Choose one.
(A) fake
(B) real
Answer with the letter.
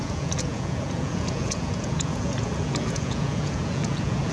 A